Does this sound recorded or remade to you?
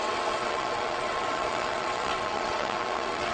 remade